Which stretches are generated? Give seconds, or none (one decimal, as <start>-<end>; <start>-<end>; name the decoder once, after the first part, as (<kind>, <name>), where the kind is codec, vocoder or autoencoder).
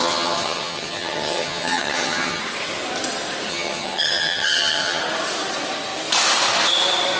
0.0-2.4 (vocoder, HiFi-GAN); 3.5-5.0